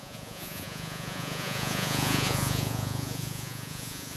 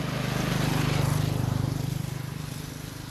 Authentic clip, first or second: second